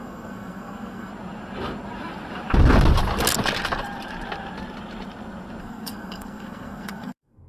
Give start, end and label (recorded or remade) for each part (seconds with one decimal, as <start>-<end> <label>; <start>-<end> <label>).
0.0-1.1 remade; 1.1-5.6 recorded; 5.6-7.5 remade